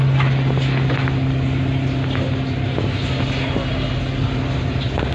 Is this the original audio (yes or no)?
yes